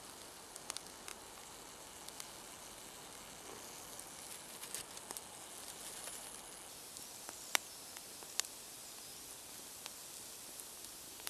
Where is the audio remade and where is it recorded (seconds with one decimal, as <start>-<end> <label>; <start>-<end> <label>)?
0.0-11.3 recorded